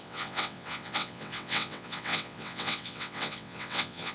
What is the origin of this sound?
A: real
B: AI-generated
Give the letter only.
B